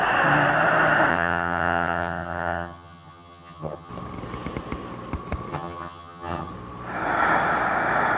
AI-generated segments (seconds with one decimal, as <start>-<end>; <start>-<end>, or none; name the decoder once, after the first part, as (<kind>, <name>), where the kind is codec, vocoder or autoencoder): 1.1-3.9 (vocoder, HiFi-GAN); 5.5-6.5